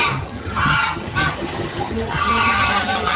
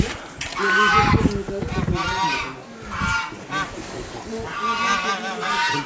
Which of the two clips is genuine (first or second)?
second